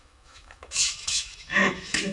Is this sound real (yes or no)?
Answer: no